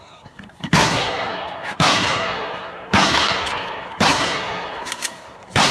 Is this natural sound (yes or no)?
no